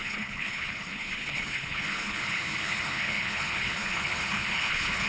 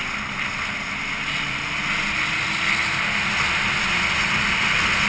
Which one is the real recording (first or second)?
second